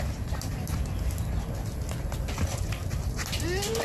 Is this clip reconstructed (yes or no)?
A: no